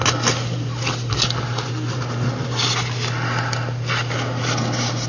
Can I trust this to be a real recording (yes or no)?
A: yes